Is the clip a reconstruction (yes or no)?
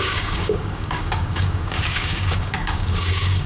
yes